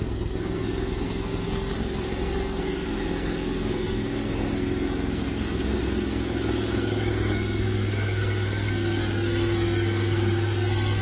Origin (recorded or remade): remade